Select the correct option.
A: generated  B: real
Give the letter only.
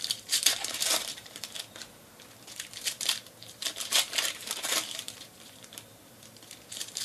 A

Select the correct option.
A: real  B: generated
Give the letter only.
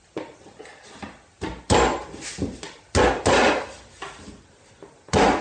A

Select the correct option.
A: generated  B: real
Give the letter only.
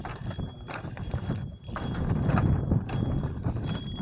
A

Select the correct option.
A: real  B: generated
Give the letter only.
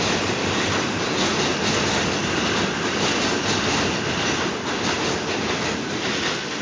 A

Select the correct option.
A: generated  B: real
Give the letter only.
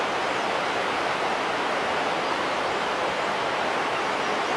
A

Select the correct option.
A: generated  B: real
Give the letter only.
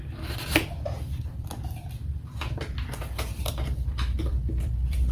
A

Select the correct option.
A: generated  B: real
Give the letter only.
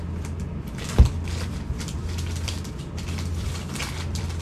A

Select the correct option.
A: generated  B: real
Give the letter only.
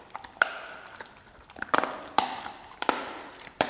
A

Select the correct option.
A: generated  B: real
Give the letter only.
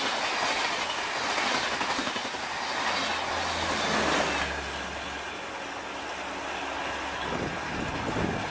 B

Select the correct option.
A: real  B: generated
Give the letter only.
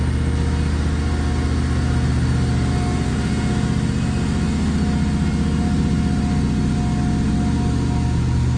A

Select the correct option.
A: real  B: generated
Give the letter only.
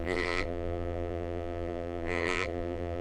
B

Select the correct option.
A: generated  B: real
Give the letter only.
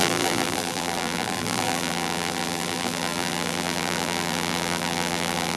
A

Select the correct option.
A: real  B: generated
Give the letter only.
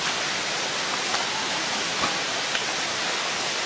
A